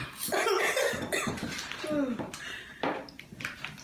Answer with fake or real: real